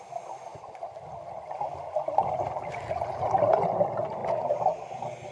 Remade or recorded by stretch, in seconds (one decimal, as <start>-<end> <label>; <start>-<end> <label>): 0.0-5.3 recorded